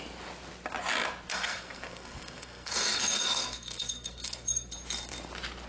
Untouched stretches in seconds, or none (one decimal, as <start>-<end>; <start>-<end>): 0.0-1.3; 4.7-5.7